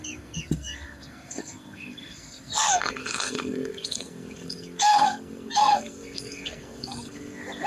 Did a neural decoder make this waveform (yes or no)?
yes